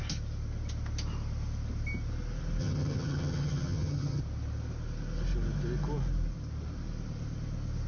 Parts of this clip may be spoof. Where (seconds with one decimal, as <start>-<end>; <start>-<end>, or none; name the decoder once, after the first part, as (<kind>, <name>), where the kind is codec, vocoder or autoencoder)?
2.6-4.2 (vocoder, HiFi-GAN)